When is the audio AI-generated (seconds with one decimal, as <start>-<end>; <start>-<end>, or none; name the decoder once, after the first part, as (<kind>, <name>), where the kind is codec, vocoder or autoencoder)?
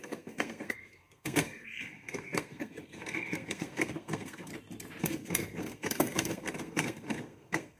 0.0-4.5 (codec, SNAC); 5.0-7.8